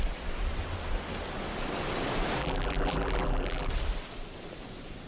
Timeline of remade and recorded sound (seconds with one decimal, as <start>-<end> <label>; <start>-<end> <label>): 0.0-2.4 recorded; 2.4-3.7 remade; 3.7-5.1 recorded